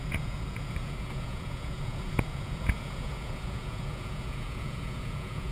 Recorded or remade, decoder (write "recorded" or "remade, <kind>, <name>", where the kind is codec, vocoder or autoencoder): remade, vocoder, Vocos